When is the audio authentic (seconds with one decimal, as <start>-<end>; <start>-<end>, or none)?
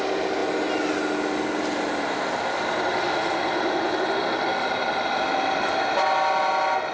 0.0-6.9